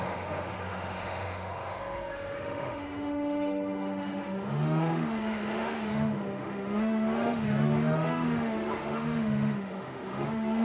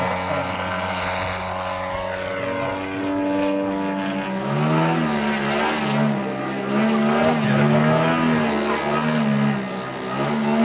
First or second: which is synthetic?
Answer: first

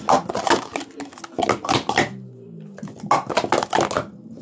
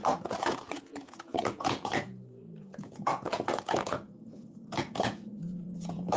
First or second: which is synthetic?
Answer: second